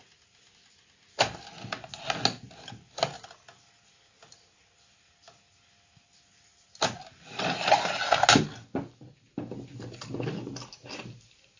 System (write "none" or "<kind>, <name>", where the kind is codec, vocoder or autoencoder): none